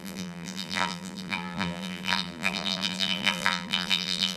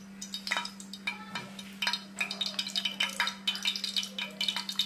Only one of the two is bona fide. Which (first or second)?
second